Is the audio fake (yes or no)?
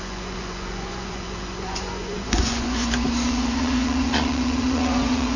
yes